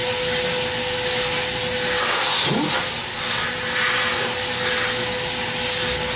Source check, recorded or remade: recorded